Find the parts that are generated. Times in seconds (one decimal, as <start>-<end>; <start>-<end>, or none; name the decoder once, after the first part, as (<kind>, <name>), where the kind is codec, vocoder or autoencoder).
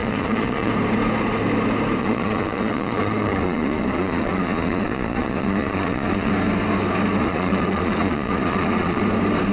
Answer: 0.0-0.7 (vocoder, Vocos); 2.0-6.3; 7.2-9.0